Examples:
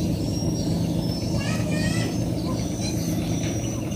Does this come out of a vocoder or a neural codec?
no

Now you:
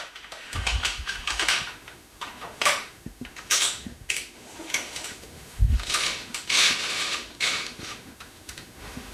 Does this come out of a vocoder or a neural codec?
yes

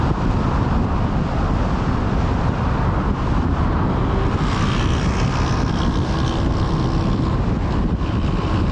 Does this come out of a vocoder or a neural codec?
no